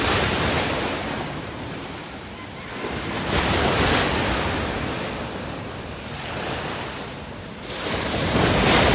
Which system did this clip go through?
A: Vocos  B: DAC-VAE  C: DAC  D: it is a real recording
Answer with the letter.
D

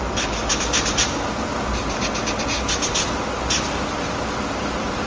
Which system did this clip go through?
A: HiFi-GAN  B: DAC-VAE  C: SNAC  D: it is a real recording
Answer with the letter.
D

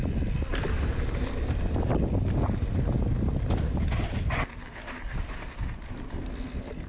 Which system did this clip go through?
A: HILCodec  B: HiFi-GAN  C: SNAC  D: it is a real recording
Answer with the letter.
D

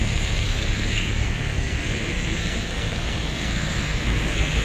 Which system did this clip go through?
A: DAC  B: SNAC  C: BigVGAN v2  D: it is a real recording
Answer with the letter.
B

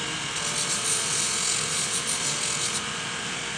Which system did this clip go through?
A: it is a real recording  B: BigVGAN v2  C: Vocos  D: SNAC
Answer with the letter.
A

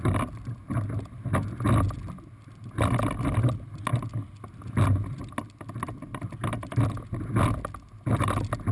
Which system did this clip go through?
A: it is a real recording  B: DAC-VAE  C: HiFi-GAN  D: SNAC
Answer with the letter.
A